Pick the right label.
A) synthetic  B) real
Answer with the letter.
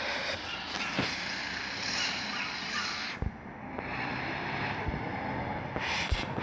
B